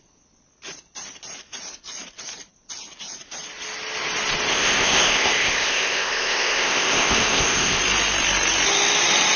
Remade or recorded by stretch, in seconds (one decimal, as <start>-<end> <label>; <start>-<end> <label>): 0.0-4.5 recorded; 4.5-7.8 remade; 7.8-9.4 recorded